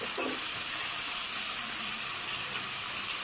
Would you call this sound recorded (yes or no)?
yes